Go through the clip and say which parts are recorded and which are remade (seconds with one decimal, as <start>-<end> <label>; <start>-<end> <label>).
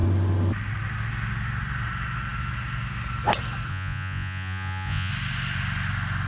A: 0.0-3.7 recorded; 3.7-5.1 remade; 5.1-6.3 recorded